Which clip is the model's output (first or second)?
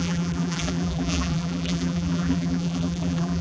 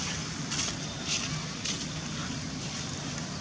first